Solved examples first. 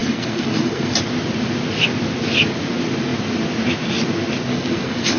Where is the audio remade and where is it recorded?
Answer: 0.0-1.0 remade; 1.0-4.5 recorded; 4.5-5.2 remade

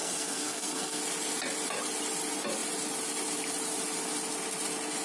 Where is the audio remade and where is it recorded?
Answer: 0.0-1.0 remade; 1.0-5.0 recorded

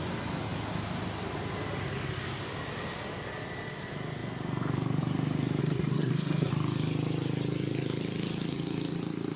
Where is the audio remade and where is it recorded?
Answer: 0.0-5.6 recorded; 5.6-6.5 remade; 6.5-9.4 recorded

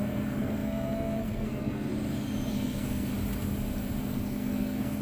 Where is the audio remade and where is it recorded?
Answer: 0.0-1.9 remade; 1.9-2.5 recorded; 2.5-3.1 remade; 3.1-4.0 recorded; 4.0-5.0 remade

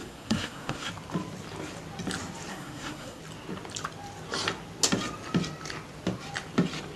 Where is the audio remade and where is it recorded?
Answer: 0.0-0.9 remade; 0.9-2.5 recorded; 2.5-3.2 remade; 3.2-7.0 recorded